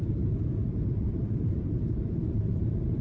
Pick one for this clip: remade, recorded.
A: remade